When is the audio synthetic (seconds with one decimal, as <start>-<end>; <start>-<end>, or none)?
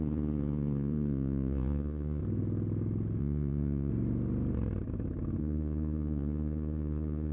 0.0-2.2; 3.2-3.9; 5.4-7.3